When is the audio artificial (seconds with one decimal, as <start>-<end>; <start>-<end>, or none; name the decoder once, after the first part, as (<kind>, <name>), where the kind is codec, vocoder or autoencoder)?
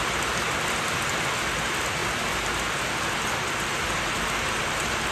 none